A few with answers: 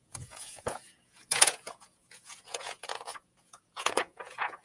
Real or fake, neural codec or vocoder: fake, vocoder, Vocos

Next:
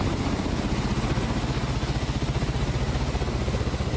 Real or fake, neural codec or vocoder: real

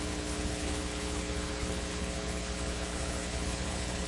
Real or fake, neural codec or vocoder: fake, codec, HILCodec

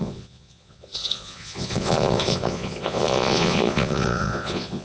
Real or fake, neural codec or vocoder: fake, vocoder, Vocos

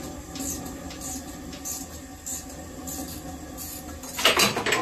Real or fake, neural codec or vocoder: real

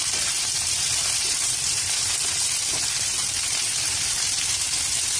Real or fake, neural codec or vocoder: fake, vocoder, BigVGAN v2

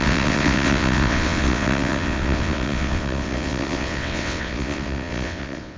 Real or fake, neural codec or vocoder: fake, vocoder, WaveNeXt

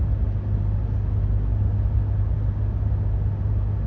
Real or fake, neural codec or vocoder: real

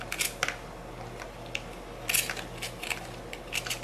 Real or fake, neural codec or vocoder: real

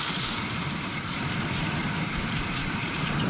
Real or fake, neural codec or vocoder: fake, vocoder, BigVGAN v2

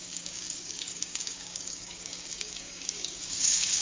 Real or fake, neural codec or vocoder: fake, codec, DAC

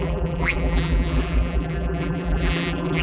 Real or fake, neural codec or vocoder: fake, vocoder, BigVGAN v2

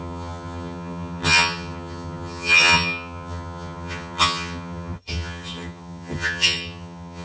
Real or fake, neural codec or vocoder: fake, vocoder, HiFi-GAN